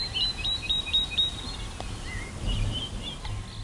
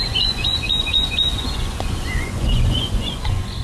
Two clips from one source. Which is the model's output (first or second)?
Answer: second